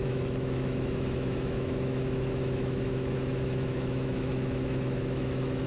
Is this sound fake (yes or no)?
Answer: yes